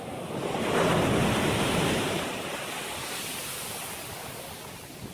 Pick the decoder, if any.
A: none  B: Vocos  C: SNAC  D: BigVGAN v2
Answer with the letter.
A